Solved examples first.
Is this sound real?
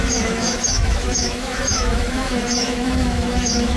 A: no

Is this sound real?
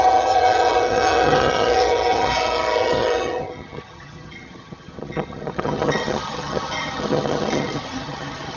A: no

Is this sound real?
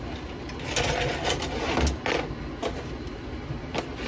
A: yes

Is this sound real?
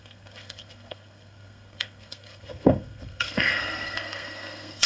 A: no